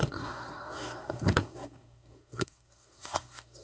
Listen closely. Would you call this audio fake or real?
fake